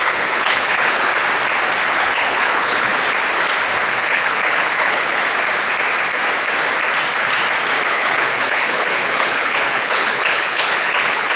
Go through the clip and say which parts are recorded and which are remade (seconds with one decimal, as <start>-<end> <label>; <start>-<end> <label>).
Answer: 0.0-1.1 remade; 1.1-1.9 recorded; 1.9-2.9 remade; 2.9-3.9 recorded; 3.9-5.2 remade; 5.2-7.9 recorded; 7.9-11.4 remade